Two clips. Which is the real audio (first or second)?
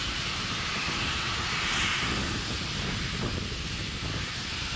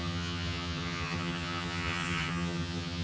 first